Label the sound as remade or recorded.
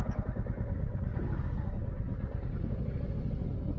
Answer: recorded